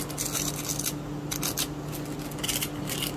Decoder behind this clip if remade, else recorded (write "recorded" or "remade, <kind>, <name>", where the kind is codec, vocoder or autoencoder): recorded